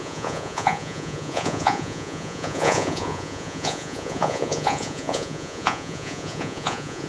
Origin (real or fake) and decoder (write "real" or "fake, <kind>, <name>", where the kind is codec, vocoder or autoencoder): fake, vocoder, Vocos